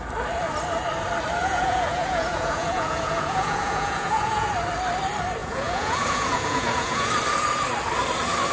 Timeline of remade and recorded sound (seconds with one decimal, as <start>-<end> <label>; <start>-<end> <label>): 0.0-1.4 recorded; 1.4-4.5 remade; 4.5-5.4 recorded; 5.4-7.1 remade; 7.1-8.5 recorded